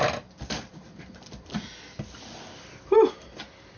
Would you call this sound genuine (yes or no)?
yes